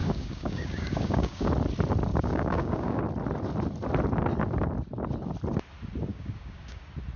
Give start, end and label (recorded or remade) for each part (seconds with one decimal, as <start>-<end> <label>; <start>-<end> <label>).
0.0-1.5 remade; 1.5-2.1 recorded; 2.1-3.0 remade; 3.0-6.1 recorded; 6.1-6.8 remade; 6.8-7.2 recorded